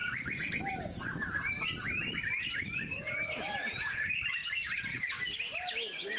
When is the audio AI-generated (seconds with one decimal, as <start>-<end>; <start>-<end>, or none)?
0.0-3.3